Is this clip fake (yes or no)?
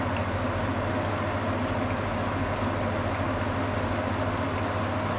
no